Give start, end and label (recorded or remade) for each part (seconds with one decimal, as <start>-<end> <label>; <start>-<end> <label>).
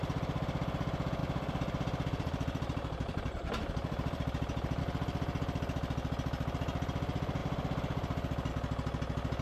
0.0-1.2 recorded; 1.2-4.8 remade; 4.8-9.4 recorded